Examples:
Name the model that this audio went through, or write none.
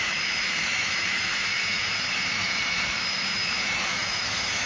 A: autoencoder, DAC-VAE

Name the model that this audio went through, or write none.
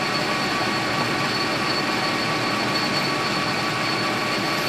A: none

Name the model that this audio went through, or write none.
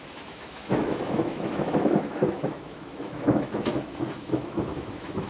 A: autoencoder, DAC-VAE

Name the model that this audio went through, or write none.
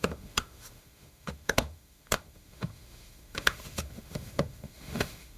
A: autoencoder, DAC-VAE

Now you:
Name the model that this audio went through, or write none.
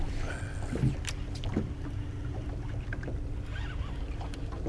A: none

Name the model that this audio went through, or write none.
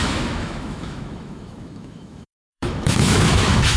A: autoencoder, DAC-VAE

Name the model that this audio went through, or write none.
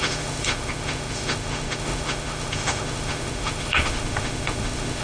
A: autoencoder, DAC-VAE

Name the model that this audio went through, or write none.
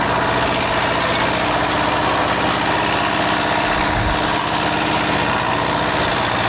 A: none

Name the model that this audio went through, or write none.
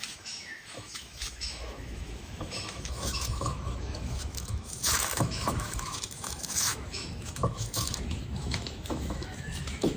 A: autoencoder, DAC-VAE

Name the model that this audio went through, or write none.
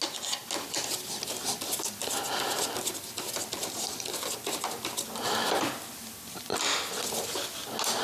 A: none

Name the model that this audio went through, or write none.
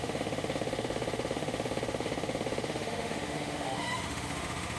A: autoencoder, DAC-VAE